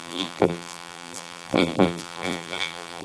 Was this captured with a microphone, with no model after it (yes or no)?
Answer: no